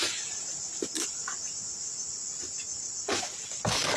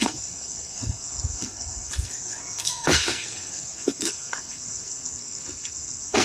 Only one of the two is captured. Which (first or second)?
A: first